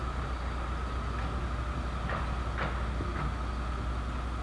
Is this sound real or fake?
real